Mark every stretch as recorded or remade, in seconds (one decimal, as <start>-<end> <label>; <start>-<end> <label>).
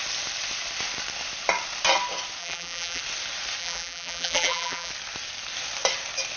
0.0-2.4 recorded; 2.4-3.0 remade; 3.0-3.6 recorded; 3.6-4.9 remade; 4.9-6.4 recorded